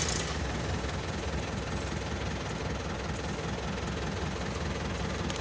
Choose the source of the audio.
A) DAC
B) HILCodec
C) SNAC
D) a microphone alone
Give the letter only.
D